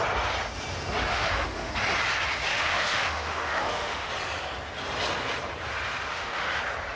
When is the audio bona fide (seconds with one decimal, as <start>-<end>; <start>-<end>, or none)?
0.0-1.1; 1.7-2.5; 4.1-6.1; 6.6-7.0